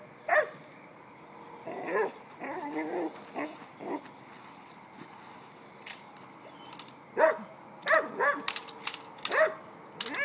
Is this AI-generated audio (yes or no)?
no